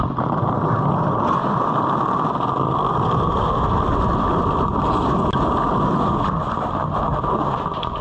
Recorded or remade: recorded